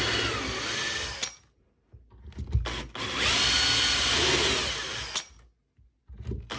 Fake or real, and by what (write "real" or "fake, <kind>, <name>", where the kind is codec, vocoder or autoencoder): real